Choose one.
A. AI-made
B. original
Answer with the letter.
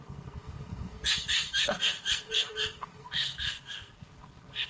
A